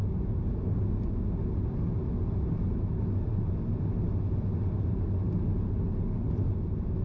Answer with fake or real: real